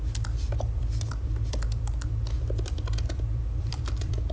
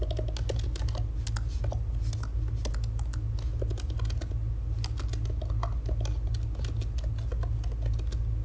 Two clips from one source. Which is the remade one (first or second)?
first